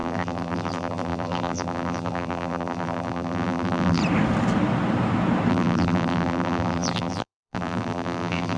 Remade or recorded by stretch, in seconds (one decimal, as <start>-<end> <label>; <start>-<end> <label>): 0.0-4.0 remade; 4.0-5.5 recorded; 5.5-8.6 remade